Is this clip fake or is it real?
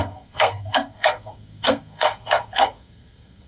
fake